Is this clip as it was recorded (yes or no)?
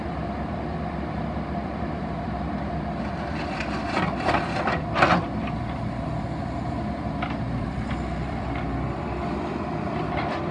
no